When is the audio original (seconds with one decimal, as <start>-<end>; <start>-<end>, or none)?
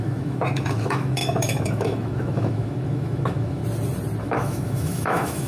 3.6-4.2